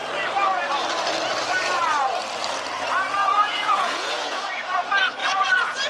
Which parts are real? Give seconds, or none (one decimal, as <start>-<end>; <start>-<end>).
0.0-3.2; 4.4-5.2